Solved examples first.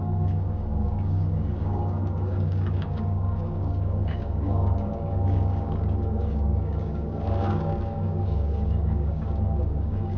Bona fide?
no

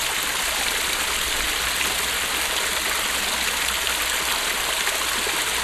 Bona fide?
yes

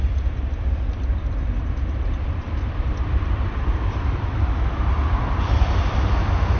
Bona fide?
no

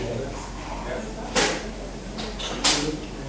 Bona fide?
yes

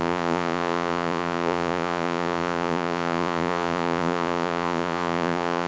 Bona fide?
no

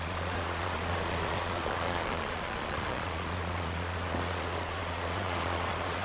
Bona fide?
no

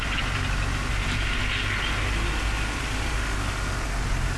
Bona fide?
yes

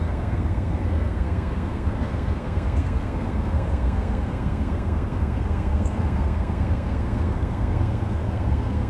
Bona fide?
no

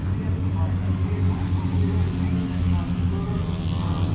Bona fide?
yes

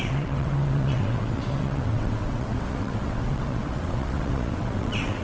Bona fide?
no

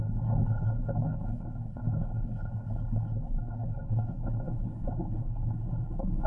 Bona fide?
no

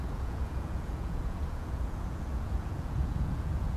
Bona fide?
no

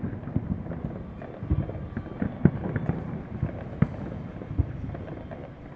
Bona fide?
yes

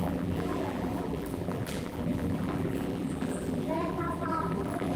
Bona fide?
no